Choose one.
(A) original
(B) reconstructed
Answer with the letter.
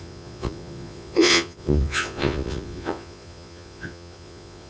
B